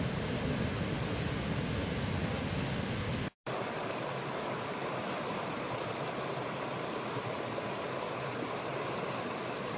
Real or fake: real